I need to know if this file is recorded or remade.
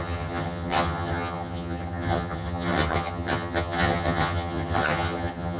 remade